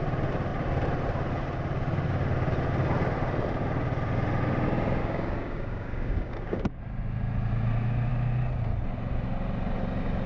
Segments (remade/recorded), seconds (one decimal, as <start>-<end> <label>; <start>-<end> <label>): 0.0-5.0 recorded; 5.0-6.8 remade; 6.8-10.3 recorded